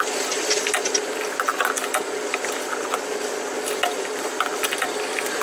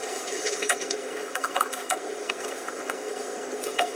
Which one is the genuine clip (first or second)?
first